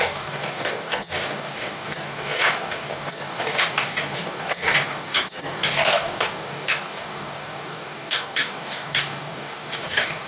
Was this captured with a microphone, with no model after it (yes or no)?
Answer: no